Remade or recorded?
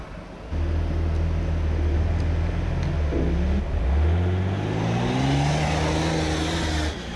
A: recorded